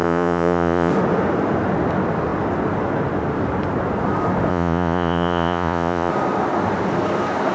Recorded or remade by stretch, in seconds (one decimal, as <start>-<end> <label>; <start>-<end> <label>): 0.0-0.9 remade; 0.9-4.5 recorded; 4.5-6.1 remade; 6.1-7.5 recorded